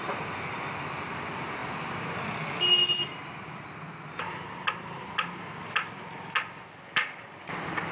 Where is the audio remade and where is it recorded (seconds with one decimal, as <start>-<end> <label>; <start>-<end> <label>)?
0.0-7.9 recorded